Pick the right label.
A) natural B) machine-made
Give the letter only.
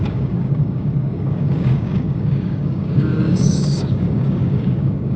B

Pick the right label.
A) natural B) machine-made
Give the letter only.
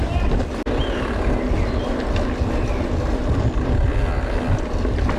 A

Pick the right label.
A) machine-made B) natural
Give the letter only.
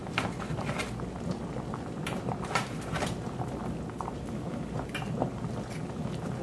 B